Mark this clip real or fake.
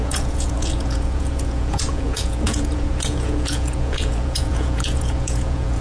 fake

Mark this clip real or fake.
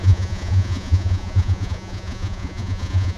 fake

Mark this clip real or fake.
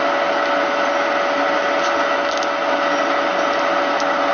real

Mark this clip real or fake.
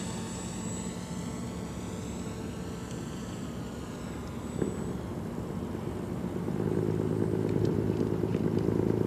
real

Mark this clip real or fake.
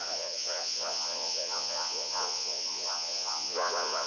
fake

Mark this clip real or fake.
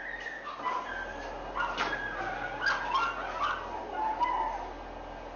real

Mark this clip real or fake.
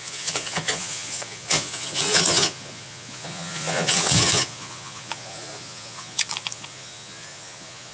fake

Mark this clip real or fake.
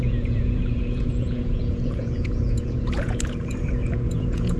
fake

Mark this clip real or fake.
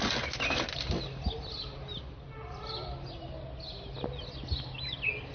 real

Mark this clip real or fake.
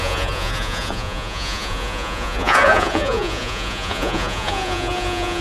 fake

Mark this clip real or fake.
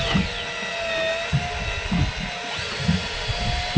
real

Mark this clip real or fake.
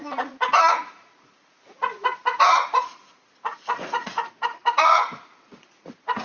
fake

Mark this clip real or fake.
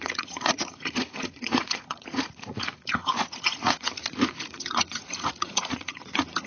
fake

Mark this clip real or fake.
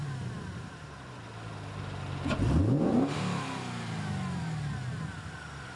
real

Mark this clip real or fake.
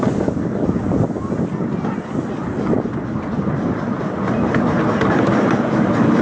real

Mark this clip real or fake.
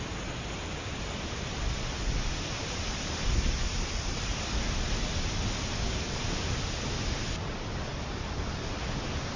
real